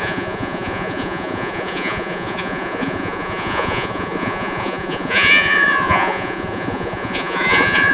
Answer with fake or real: fake